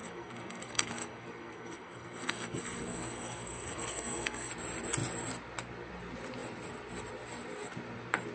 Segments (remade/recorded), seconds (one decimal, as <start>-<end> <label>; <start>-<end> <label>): 0.0-4.5 remade; 4.5-8.3 recorded